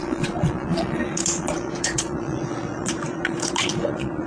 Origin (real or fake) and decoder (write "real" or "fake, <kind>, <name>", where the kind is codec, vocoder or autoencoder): fake, vocoder, Vocos